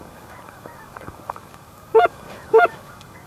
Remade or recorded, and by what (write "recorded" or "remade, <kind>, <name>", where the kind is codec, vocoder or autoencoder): remade, codec, DAC